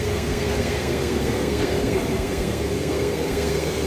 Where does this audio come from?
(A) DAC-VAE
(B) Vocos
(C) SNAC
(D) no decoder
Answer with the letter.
C